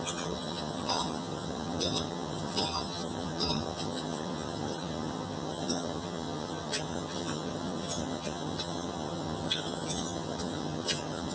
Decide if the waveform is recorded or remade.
remade